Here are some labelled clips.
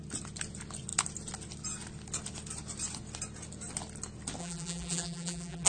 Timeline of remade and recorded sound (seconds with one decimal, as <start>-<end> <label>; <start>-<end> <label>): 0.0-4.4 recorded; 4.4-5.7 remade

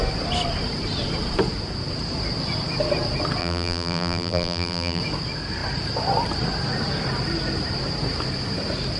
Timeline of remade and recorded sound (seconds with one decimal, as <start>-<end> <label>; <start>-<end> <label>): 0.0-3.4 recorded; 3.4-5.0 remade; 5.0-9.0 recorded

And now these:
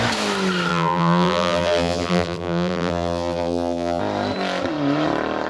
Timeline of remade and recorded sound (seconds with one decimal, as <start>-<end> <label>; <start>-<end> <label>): 0.0-0.7 recorded; 0.7-4.0 remade; 4.0-5.5 recorded

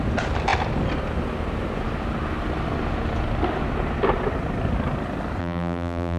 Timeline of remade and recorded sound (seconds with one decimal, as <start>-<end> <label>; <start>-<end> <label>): 0.0-5.4 recorded; 5.4-6.2 remade